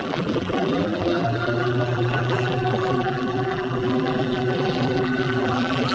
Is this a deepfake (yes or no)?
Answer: yes